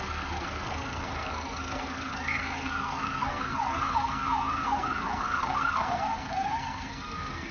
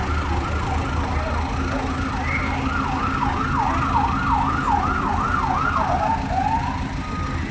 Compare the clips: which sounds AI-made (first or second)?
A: first